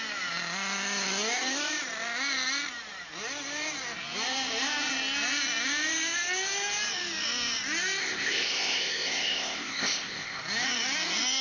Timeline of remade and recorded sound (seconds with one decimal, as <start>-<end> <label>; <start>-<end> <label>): 0.0-8.0 recorded; 8.0-10.4 remade; 10.4-11.4 recorded